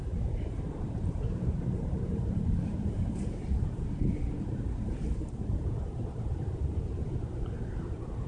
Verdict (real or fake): fake